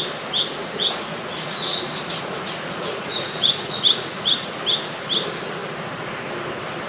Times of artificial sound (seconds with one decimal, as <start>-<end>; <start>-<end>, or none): 0.6-4.6